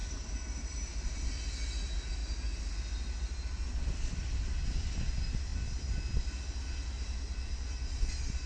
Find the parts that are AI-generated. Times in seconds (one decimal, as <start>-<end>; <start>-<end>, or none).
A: none